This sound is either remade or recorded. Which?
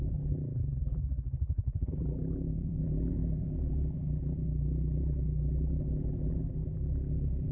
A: remade